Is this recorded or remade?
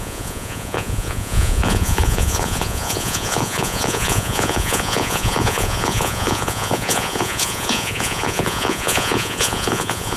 remade